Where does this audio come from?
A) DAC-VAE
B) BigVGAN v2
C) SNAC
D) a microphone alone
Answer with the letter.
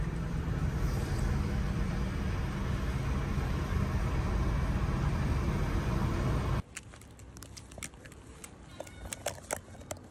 D